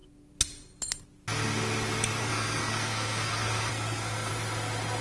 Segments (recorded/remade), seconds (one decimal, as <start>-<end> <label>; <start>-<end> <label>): 0.0-2.2 recorded; 2.2-4.3 remade; 4.3-5.0 recorded